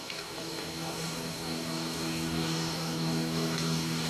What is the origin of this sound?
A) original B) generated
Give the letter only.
B